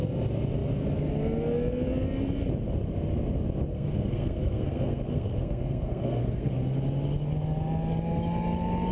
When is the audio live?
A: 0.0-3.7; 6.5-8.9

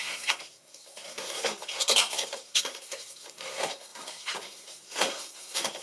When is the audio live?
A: none

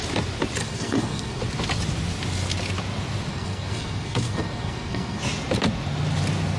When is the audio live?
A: 0.0-0.6; 1.4-3.3; 5.2-6.6

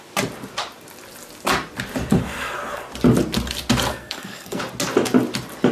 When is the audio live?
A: 0.0-2.2; 2.9-3.9; 4.6-5.7

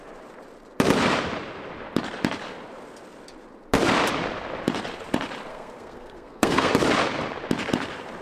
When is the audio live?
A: 0.0-5.5; 6.7-8.2

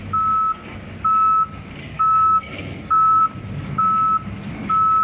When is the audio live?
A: 0.0-1.8; 3.2-5.0

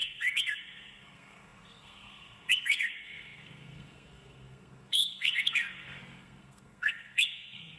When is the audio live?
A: none

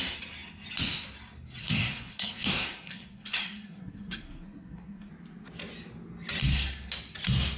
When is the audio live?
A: 0.0-1.6; 5.1-6.4; 6.9-7.6